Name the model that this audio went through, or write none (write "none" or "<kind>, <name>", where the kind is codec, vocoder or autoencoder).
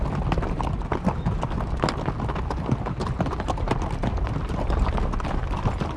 none